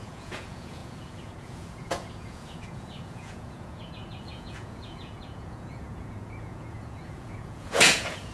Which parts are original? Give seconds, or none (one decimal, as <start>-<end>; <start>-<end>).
none